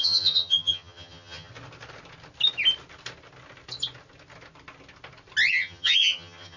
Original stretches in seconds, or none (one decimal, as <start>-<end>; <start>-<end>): 1.5-5.5